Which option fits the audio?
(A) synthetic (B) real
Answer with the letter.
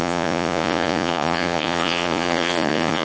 A